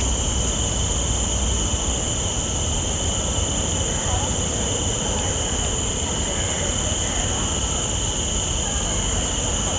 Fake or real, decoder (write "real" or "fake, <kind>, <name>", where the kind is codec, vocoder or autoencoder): real